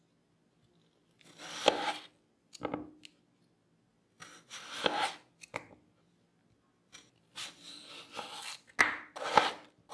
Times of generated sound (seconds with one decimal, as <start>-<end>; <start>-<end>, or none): none